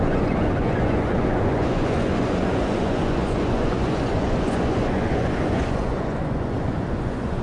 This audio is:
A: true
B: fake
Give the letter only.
B